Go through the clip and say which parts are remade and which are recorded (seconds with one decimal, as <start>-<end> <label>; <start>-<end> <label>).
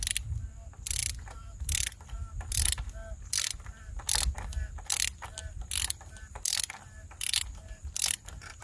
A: 0.0-8.6 recorded